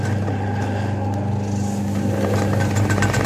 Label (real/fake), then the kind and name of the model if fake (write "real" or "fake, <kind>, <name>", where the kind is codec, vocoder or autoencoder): real